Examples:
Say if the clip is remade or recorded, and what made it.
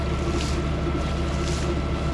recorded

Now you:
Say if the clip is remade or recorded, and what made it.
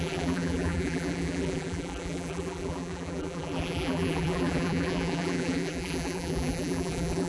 remade, vocoder, BigVGAN v2